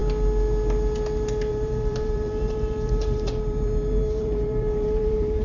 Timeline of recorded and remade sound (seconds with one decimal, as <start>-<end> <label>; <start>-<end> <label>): 0.0-1.5 recorded; 1.5-5.4 remade